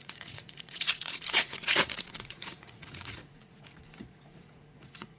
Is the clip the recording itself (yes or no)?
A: no